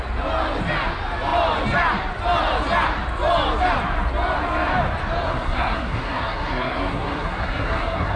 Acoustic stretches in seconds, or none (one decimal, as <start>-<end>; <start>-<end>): 0.0-5.3